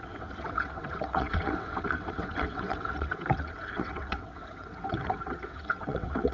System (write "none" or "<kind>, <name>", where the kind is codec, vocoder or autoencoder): vocoder, WaveNeXt